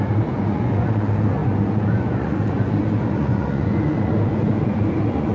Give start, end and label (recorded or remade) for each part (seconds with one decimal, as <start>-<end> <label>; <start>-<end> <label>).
0.0-5.3 remade